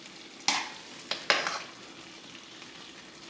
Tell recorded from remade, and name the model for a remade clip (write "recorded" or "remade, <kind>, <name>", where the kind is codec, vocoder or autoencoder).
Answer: recorded